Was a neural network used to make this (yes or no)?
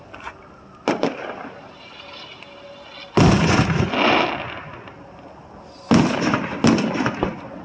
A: no